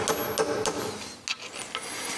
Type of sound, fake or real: real